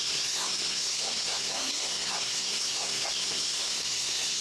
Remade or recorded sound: remade